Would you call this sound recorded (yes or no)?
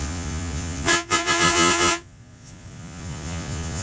no